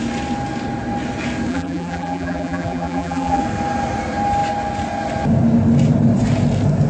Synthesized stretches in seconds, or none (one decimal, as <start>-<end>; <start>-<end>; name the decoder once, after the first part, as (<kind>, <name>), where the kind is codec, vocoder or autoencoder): 1.5-3.4 (vocoder, BigVGAN v2)